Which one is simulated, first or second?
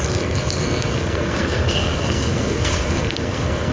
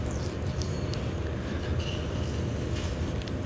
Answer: first